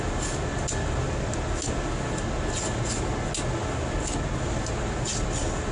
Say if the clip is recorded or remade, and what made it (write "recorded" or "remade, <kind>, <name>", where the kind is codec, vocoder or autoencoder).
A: recorded